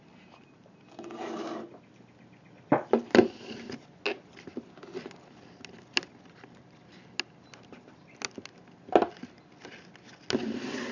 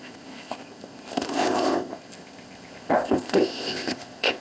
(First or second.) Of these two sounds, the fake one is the second